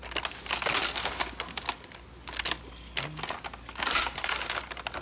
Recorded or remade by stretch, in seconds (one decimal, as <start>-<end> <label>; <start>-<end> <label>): 0.0-5.0 recorded